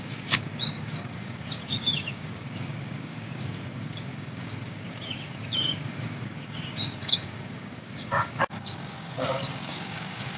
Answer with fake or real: fake